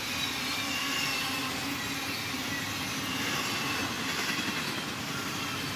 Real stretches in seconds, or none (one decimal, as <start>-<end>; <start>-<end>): 0.0-5.8